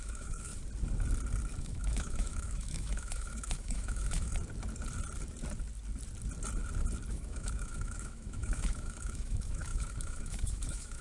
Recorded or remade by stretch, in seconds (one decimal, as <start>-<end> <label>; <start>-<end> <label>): 0.0-0.5 remade; 0.5-1.6 recorded; 1.6-4.3 remade; 4.3-7.1 recorded; 7.1-11.0 remade